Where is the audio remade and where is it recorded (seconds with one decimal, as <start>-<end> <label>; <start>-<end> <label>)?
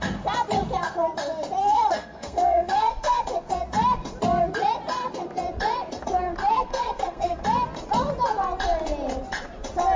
0.0-1.6 recorded; 1.6-3.2 remade; 3.2-6.5 recorded; 6.5-7.4 remade; 7.4-10.0 recorded